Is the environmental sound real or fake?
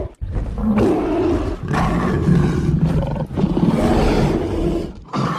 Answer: real